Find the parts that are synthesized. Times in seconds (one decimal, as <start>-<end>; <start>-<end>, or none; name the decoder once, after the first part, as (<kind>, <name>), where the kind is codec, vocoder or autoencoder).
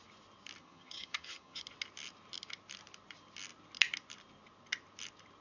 0.6-1.6 (vocoder, HiFi-GAN)